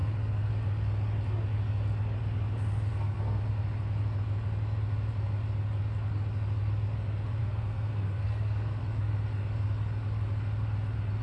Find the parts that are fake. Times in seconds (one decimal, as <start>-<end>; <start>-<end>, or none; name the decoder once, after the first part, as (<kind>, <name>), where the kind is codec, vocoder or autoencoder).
0.0-0.5 (codec, SNAC); 2.9-3.4; 7.4-8.8